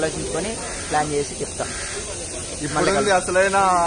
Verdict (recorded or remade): recorded